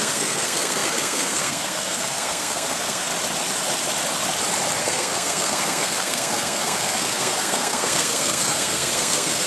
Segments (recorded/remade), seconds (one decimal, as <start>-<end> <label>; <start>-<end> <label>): 0.0-3.1 remade; 3.1-4.8 recorded; 4.8-9.5 remade